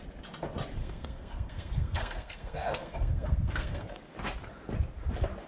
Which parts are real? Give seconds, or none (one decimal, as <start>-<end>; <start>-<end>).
0.0-0.8; 4.1-5.5